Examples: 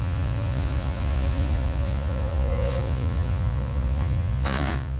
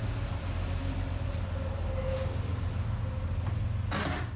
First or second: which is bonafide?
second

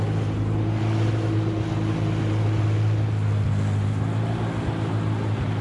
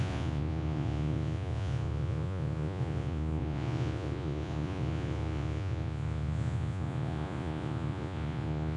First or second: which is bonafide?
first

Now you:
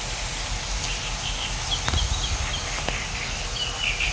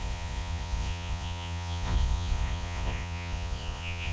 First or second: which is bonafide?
first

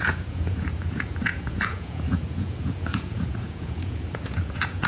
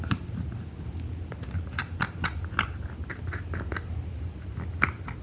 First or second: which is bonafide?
second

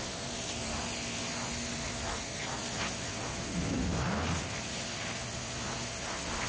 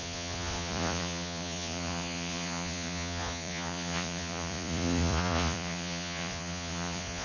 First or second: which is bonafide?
first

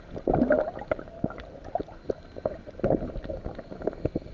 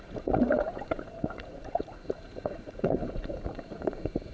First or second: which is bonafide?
first